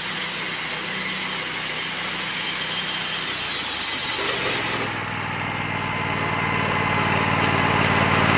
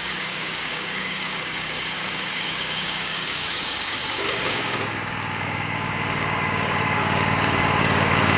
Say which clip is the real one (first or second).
first